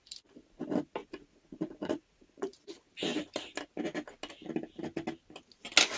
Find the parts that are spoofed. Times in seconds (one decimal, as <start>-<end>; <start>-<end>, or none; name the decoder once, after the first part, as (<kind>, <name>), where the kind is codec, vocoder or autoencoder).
1.0-2.6 (vocoder, Vocos)